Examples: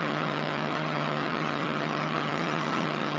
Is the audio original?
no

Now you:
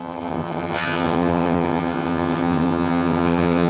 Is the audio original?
no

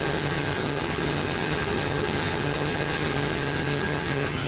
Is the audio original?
no